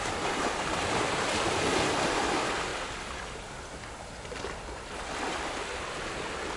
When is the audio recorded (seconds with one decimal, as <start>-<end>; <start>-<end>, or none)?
0.0-6.6